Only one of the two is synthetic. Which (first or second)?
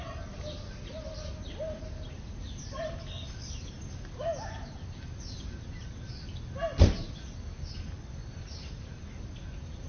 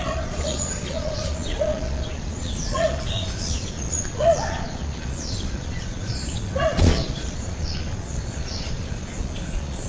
second